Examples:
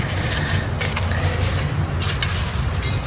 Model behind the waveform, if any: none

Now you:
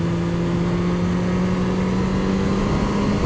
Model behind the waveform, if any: none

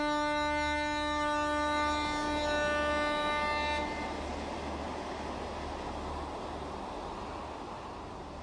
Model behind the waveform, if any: none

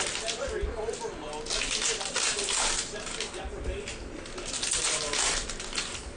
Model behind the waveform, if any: none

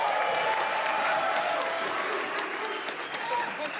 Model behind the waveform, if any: none